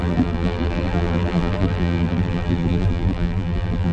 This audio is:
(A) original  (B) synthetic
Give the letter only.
B